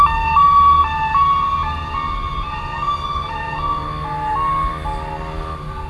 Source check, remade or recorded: recorded